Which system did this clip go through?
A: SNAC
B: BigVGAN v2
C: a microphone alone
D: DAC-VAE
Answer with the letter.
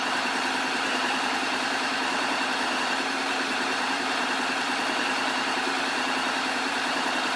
B